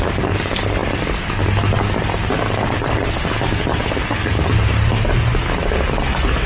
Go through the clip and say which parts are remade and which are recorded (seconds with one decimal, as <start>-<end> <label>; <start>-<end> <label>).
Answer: 0.0-6.5 recorded